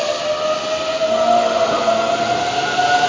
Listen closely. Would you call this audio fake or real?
real